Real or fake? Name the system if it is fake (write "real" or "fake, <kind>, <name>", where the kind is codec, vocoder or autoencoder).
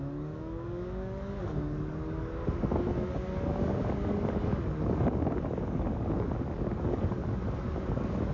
fake, codec, DAC